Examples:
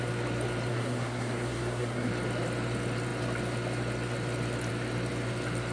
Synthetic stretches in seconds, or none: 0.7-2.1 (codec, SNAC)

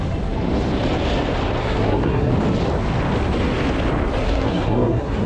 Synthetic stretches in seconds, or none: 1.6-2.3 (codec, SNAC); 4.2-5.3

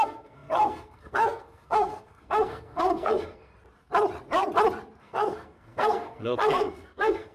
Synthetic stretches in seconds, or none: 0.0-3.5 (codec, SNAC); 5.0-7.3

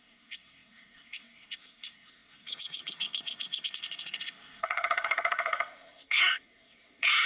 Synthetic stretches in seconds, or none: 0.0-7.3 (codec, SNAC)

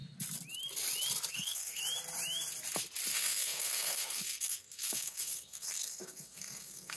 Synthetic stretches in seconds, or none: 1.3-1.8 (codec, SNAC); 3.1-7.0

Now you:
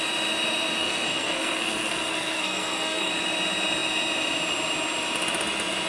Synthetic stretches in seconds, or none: 0.8-3.1 (codec, SNAC)